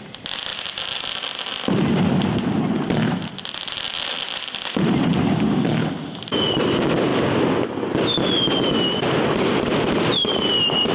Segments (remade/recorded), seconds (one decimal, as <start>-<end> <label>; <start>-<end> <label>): 0.0-10.9 recorded